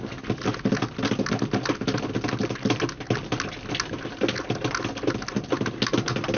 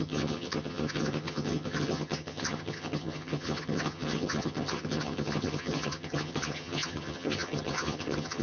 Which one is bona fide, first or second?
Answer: first